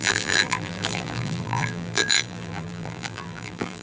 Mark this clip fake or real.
fake